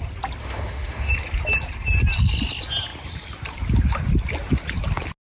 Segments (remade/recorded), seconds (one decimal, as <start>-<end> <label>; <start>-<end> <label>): 0.0-0.4 recorded; 0.4-1.1 remade; 1.1-5.2 recorded